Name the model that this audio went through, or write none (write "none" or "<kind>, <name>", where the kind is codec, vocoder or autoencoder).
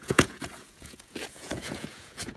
vocoder, Vocos